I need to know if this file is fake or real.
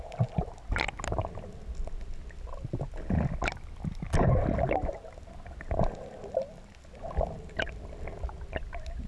real